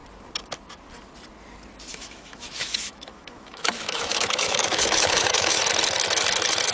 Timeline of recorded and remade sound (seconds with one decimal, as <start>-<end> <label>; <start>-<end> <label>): 0.0-1.9 recorded; 1.9-5.6 remade; 5.6-6.7 recorded